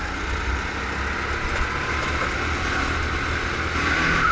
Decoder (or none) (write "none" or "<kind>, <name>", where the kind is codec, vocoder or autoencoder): none